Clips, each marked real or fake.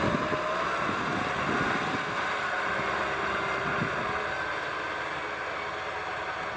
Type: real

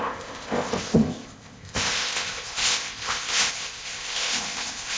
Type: fake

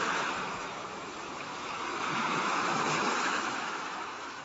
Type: fake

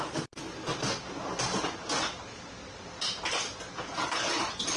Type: real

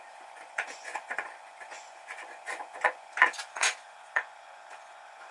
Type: fake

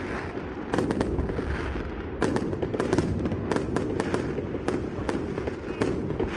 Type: real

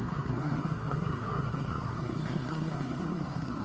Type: fake